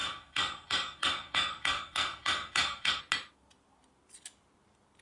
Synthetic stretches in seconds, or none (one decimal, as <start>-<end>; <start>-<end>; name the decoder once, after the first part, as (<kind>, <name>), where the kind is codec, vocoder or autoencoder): 0.0-3.0 (codec, SNAC)